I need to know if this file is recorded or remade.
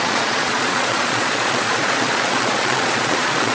remade